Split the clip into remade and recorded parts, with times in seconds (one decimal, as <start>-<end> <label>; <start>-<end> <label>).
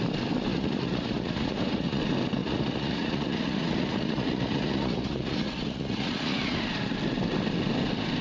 0.0-0.5 recorded; 0.5-2.0 remade; 2.0-2.4 recorded; 2.4-6.6 remade; 6.6-8.2 recorded